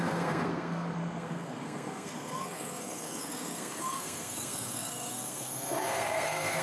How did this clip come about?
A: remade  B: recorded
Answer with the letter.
A